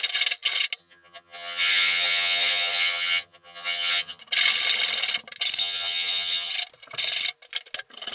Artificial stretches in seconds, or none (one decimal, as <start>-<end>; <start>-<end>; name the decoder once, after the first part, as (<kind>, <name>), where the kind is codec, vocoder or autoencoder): 0.8-4.2 (vocoder, HiFi-GAN); 5.6-6.5